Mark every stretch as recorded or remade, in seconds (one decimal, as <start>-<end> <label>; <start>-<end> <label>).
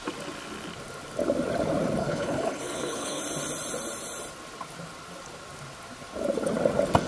0.0-2.0 recorded; 2.0-3.2 remade; 3.2-7.1 recorded